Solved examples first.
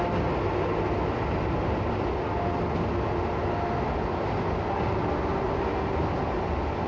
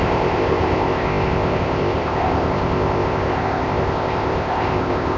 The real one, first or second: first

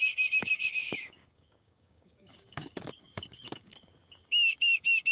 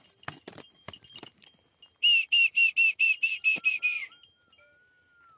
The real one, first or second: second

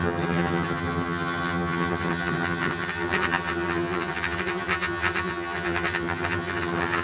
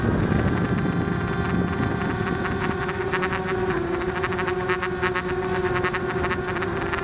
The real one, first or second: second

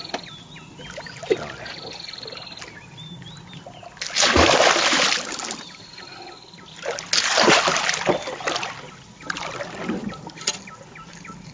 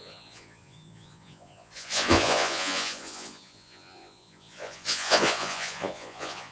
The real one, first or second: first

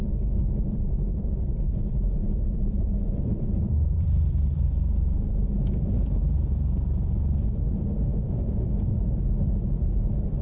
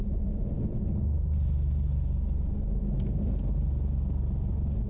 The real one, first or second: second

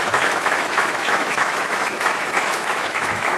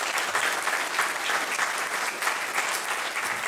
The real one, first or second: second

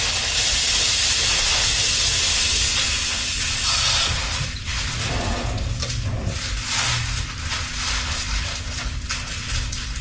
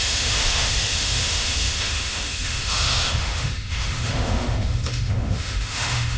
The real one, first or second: first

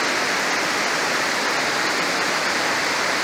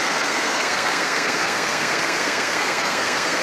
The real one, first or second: first